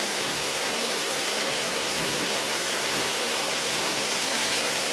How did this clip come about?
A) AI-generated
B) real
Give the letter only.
A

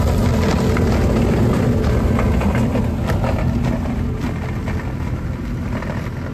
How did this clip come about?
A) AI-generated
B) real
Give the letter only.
B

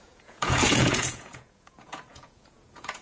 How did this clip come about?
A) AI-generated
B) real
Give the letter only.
A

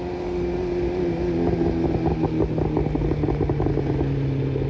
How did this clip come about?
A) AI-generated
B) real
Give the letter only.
B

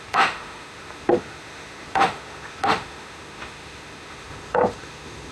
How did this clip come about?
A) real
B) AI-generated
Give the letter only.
B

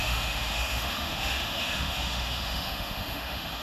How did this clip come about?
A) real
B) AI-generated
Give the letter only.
B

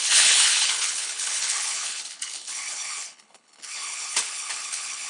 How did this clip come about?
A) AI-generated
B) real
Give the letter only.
A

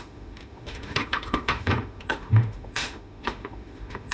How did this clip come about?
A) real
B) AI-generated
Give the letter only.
B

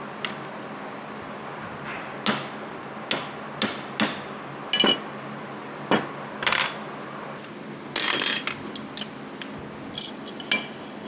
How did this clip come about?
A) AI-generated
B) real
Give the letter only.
B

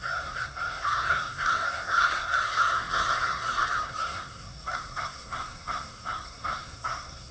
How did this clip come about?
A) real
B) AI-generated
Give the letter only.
B